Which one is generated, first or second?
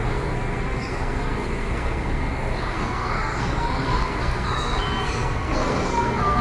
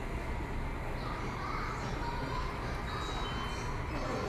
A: first